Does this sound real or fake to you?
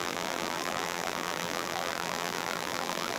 fake